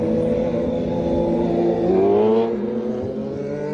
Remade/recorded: recorded